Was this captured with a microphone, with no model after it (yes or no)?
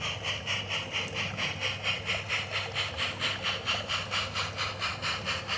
yes